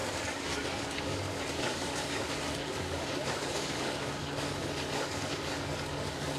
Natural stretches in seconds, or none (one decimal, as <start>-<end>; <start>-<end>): none